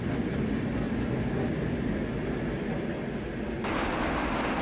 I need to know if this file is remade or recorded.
recorded